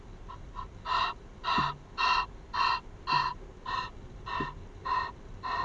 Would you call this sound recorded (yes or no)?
yes